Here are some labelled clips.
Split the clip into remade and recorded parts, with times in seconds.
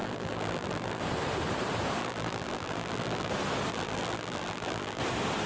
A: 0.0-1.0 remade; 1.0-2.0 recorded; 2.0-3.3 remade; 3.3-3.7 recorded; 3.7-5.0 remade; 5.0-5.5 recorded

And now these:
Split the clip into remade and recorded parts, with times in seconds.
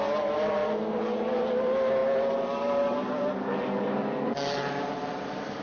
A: 0.0-5.6 remade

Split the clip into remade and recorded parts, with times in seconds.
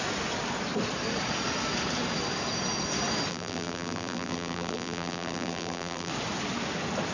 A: 0.0-3.3 recorded; 3.3-6.1 remade; 6.1-7.1 recorded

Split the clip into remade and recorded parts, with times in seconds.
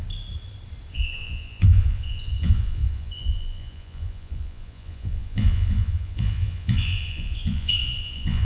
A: 0.0-0.9 recorded; 0.9-8.4 remade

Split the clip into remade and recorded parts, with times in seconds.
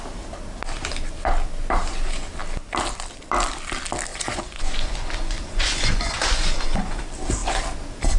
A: 0.0-4.1 recorded; 4.1-7.0 remade; 7.0-8.2 recorded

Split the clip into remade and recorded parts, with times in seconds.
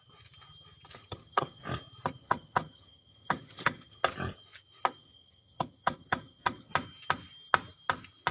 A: 0.0-1.0 recorded; 1.0-1.6 remade; 1.6-2.2 recorded; 2.2-4.0 remade; 4.0-5.0 recorded; 5.0-6.7 remade; 6.7-8.3 recorded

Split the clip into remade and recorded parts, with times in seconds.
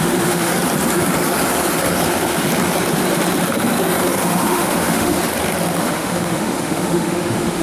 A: 0.0-0.5 remade; 0.5-4.2 recorded; 4.2-5.1 remade; 5.1-5.8 recorded; 5.8-7.6 remade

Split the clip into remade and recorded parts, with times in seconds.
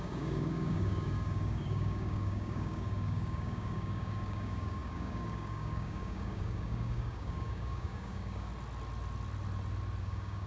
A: 0.0-8.5 remade; 8.5-10.0 recorded; 10.0-10.5 remade